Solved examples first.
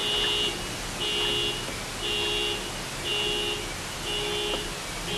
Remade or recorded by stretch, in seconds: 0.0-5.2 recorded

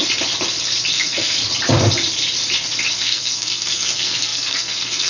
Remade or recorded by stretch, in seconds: 0.0-0.9 recorded; 0.9-1.4 remade; 1.4-2.9 recorded; 2.9-5.1 remade

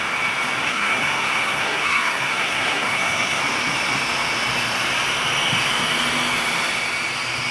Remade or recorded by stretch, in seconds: 0.0-0.6 recorded; 0.6-3.4 remade; 3.4-7.5 recorded

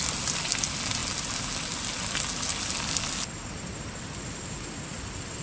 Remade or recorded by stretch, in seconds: 0.0-5.4 recorded

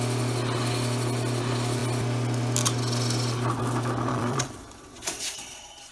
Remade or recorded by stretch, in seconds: 0.0-4.1 recorded; 4.1-5.9 remade

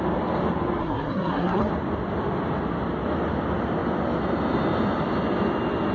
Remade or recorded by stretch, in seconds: 0.0-0.8 recorded; 0.8-1.7 remade; 1.7-5.9 recorded

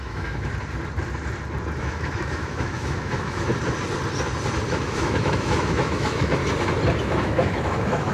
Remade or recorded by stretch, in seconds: 0.0-0.5 remade; 0.5-1.8 recorded; 1.8-3.5 remade; 3.5-4.7 recorded; 4.7-6.4 remade; 6.4-7.0 recorded; 7.0-8.1 remade